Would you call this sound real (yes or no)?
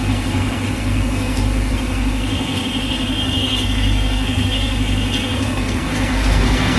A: no